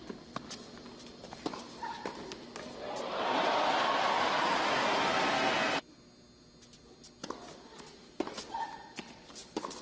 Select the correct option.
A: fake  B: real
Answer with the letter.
B